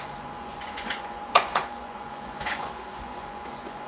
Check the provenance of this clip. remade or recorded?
remade